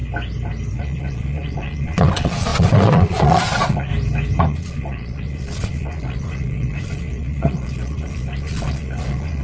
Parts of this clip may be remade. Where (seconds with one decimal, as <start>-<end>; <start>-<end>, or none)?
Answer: 0.8-3.9; 4.4-9.4